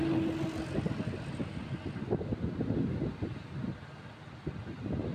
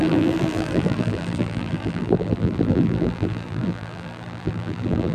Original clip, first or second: first